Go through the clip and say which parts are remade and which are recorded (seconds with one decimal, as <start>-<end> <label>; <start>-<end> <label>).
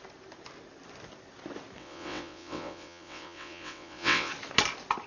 0.0-1.8 recorded; 1.8-4.3 remade; 4.3-5.1 recorded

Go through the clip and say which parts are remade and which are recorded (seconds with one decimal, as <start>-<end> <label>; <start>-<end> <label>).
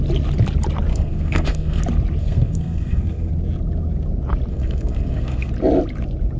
0.0-0.9 recorded; 0.9-1.8 remade; 1.8-2.2 recorded; 2.2-3.3 remade; 3.3-4.5 recorded; 4.5-5.5 remade; 5.5-6.4 recorded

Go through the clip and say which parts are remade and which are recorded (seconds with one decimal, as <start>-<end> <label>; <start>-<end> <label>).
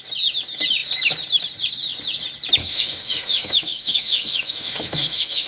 0.0-2.6 recorded; 2.6-5.5 remade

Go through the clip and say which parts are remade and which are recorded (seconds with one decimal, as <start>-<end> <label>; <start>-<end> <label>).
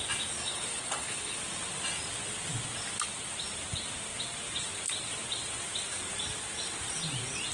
0.0-0.4 recorded; 0.4-1.4 remade; 1.4-7.5 recorded